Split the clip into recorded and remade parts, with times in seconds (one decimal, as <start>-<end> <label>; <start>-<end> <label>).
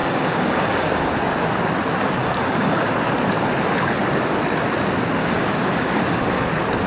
0.0-1.1 remade; 1.1-2.2 recorded; 2.2-2.9 remade; 2.9-5.2 recorded; 5.2-6.4 remade; 6.4-6.9 recorded